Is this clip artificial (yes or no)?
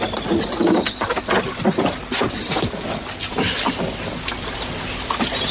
no